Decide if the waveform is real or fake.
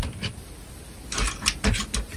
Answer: real